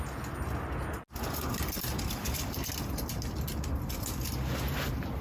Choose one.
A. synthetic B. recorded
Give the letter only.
B